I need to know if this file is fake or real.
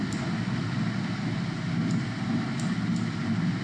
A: real